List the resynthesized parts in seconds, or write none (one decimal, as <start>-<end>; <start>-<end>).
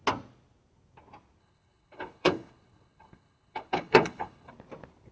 1.4-4.5